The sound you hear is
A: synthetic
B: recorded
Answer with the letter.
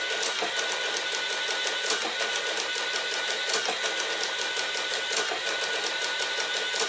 B